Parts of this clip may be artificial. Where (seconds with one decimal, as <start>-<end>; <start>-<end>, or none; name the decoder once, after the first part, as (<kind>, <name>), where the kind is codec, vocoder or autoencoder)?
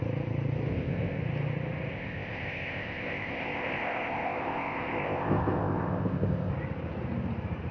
0.7-1.2 (codec, ZipCodec); 1.9-6.5